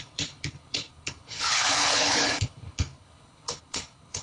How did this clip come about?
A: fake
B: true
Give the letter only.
A